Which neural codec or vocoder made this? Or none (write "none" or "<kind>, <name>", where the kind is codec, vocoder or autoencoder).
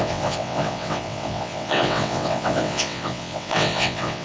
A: vocoder, WaveNeXt